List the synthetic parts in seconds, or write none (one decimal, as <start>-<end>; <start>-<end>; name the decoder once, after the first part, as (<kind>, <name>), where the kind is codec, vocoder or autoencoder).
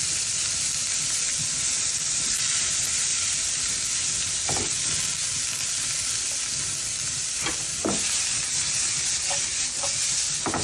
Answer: 3.1-3.7 (vocoder, BigVGAN v2); 7.7-9.9